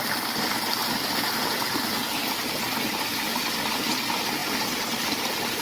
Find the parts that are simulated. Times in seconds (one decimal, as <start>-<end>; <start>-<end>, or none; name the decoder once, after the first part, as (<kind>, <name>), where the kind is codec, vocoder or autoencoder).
none